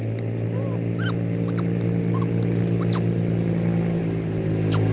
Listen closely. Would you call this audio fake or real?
real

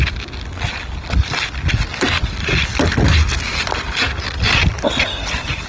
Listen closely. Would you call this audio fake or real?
real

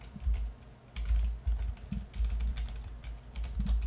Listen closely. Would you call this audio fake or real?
real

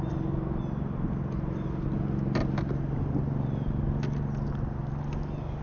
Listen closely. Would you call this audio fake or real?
real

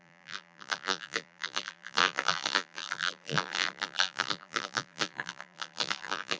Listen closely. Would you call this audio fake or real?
fake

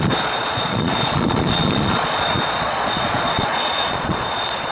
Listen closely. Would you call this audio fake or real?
fake